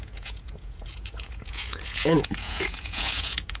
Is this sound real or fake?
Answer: fake